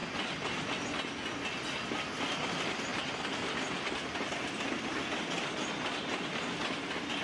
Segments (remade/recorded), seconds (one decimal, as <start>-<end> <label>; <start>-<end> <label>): 0.0-2.9 recorded; 2.9-3.5 remade; 3.5-7.2 recorded